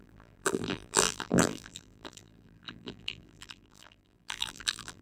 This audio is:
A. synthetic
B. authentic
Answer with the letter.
A